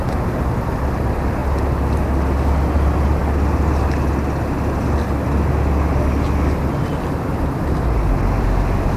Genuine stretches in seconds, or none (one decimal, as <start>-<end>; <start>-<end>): 1.4-2.3; 3.2-8.4